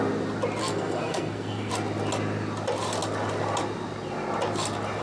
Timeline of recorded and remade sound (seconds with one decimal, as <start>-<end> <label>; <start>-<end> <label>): 0.0-0.6 recorded; 0.6-1.7 remade; 1.7-5.0 recorded